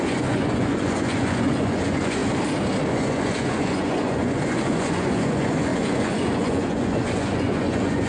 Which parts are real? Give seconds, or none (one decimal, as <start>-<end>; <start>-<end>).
2.2-2.9